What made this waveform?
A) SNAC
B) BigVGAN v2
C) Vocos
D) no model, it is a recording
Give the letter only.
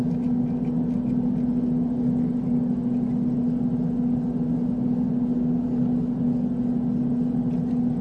D